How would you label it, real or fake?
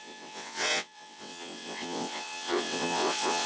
fake